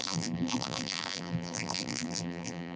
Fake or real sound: fake